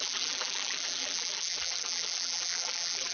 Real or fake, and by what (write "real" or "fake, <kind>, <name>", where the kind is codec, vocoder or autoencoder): fake, vocoder, BigVGAN v2